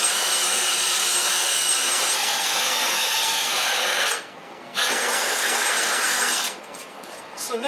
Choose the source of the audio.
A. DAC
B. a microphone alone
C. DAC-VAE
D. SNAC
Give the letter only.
D